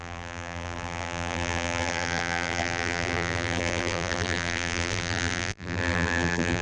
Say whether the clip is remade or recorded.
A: remade